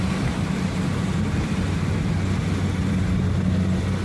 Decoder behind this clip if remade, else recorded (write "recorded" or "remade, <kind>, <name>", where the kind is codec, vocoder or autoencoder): recorded